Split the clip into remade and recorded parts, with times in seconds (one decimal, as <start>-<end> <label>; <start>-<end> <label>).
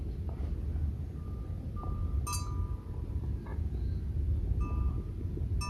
0.0-5.7 recorded